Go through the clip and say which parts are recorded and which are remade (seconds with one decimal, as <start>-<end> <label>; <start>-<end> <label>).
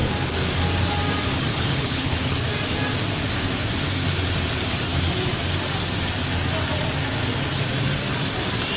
0.0-1.5 recorded; 1.5-2.4 remade; 2.4-8.8 recorded